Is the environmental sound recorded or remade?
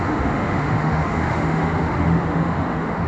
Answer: remade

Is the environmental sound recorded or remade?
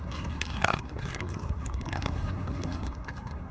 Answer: remade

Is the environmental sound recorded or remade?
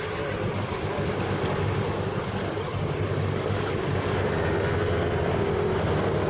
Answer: recorded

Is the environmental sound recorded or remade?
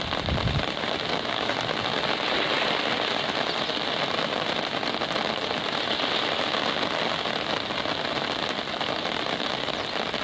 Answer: recorded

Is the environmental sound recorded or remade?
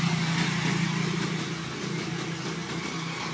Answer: recorded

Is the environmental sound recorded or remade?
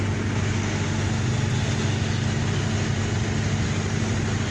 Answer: recorded